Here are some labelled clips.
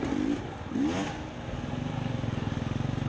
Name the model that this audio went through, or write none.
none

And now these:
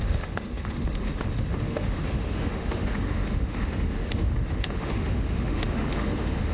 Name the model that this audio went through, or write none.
autoencoder, DAC-VAE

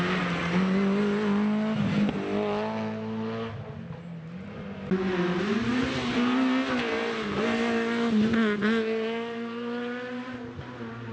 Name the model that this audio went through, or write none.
none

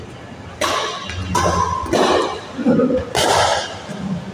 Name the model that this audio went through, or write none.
none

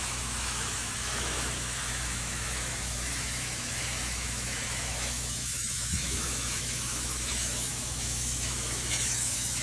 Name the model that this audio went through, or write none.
autoencoder, DAC-VAE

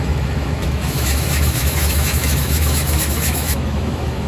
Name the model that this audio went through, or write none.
autoencoder, DAC-VAE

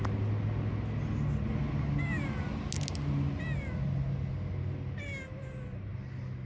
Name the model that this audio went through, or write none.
none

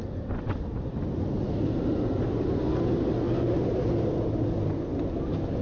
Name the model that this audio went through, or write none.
none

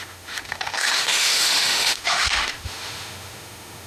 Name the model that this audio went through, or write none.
autoencoder, DAC-VAE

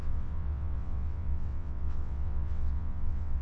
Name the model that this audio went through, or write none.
vocoder, WaveNeXt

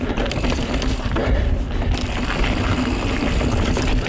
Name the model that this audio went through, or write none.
none